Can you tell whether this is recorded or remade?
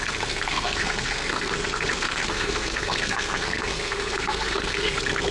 remade